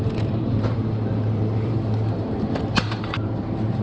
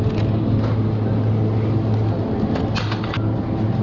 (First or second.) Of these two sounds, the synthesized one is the first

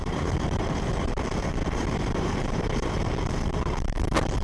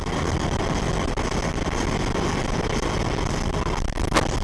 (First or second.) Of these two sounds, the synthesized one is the first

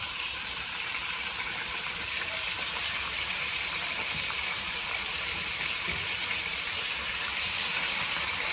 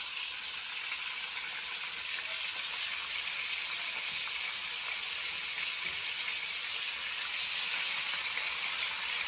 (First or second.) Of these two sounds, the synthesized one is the first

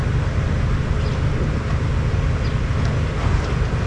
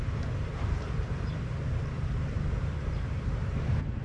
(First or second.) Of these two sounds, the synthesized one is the second